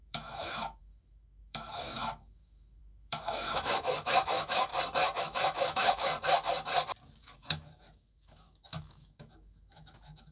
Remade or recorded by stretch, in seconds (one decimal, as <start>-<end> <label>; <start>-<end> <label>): 0.0-4.7 remade; 4.7-5.2 recorded; 5.2-6.1 remade; 6.1-7.2 recorded; 7.2-10.3 remade